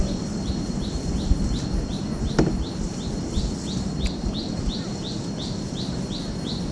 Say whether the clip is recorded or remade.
recorded